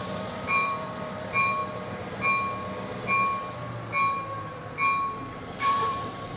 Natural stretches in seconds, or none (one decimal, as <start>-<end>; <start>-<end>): 1.6-5.4